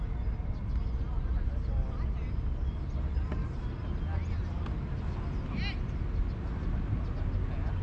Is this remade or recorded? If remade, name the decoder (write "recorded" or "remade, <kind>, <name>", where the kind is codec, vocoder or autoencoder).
recorded